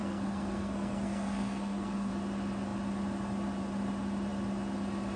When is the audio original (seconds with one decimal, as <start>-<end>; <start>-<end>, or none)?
2.1-5.2